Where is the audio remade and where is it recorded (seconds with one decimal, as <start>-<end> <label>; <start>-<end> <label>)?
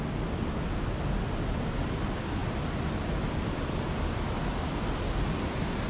0.0-5.9 recorded